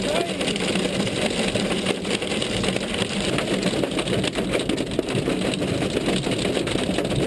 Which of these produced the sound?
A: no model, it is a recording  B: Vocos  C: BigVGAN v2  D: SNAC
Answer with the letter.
A